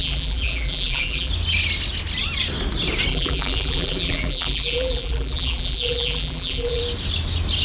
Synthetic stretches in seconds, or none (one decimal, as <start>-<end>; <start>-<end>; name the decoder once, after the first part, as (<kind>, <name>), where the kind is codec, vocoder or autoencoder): 0.0-1.3 (vocoder, BigVGAN v2); 3.1-6.8